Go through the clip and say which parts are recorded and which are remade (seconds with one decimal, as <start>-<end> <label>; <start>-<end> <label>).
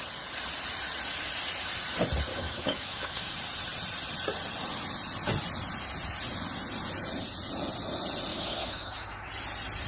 0.0-2.3 recorded; 2.3-3.3 remade; 3.3-8.3 recorded; 8.3-9.3 remade; 9.3-9.9 recorded